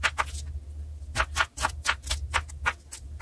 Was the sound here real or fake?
real